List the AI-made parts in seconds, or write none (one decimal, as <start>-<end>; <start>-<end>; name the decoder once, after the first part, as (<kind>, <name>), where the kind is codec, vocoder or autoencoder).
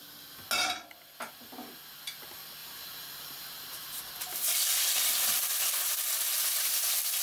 2.6-5.4 (vocoder, BigVGAN v2)